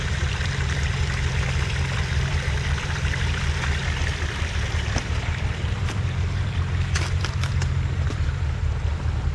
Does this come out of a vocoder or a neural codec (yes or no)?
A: yes